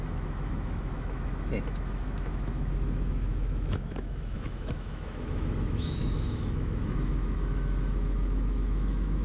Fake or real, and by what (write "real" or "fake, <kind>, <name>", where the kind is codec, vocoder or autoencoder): fake, autoencoder, DAC-VAE